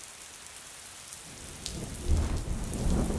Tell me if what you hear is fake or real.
real